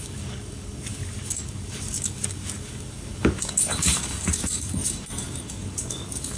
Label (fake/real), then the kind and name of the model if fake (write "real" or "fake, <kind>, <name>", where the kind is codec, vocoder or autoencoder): fake, codec, DAC